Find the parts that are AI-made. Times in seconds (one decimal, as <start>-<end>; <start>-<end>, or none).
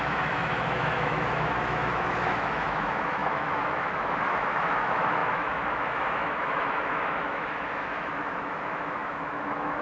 0.0-9.8